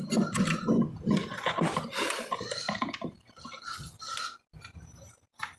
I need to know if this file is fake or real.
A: real